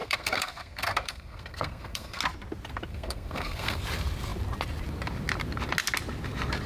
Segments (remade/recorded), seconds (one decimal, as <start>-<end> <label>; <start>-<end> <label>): 0.0-2.2 remade; 2.2-2.9 recorded; 2.9-3.8 remade; 3.8-6.7 recorded